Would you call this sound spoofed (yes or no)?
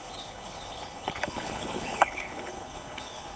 yes